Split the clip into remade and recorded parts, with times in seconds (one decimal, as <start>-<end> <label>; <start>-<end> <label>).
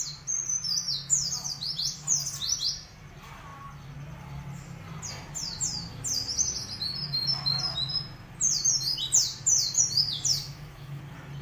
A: 0.0-10.4 recorded; 10.4-11.0 remade; 11.0-11.4 recorded